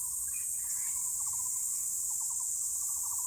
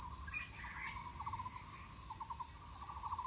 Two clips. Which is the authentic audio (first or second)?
second